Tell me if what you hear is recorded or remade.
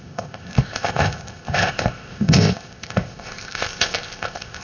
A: remade